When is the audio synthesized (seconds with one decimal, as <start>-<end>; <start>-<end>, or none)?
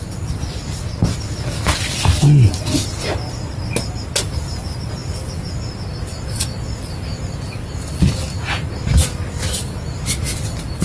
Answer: none